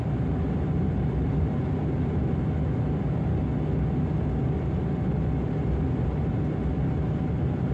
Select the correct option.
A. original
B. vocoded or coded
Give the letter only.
A